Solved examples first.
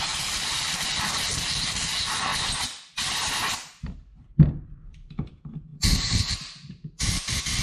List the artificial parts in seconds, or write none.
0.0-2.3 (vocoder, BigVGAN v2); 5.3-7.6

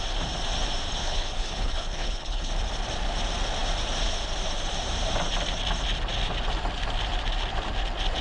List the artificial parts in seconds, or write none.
1.0-2.5 (codec, HILCodec)

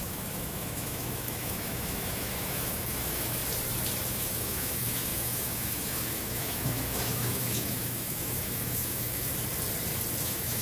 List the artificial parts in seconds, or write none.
0.0-3.4 (autoencoder, DAC-VAE); 4.1-9.3; 10.2-10.6

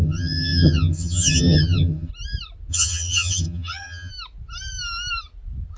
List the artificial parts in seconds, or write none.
0.0-2.1 (vocoder, HiFi-GAN); 2.7-4.1

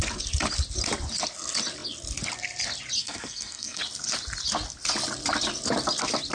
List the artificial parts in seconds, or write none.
3.0-3.8 (codec, SNAC)